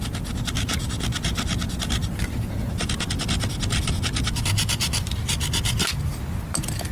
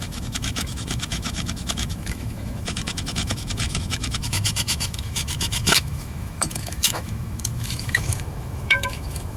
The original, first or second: first